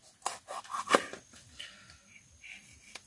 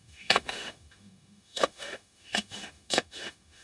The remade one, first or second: second